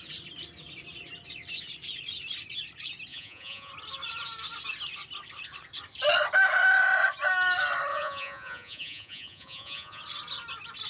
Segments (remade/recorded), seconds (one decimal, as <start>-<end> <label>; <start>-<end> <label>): 0.0-3.1 recorded; 3.1-3.7 remade; 3.7-7.9 recorded; 7.9-10.0 remade; 10.0-10.9 recorded